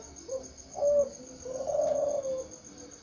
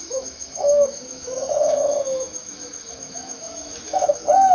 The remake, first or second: second